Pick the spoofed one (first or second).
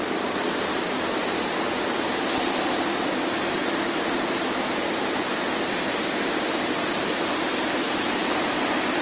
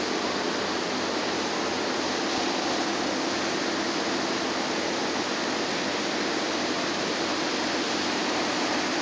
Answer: first